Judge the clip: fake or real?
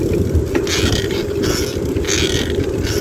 real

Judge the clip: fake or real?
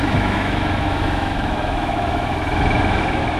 fake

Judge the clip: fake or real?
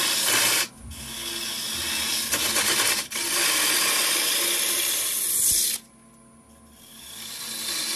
real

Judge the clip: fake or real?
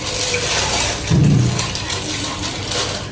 real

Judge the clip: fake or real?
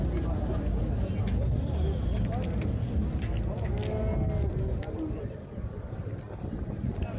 real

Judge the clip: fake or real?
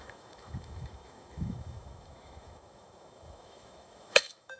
fake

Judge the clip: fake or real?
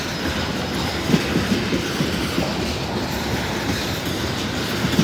real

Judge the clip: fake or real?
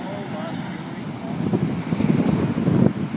real